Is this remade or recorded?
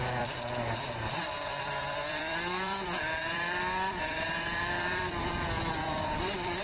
remade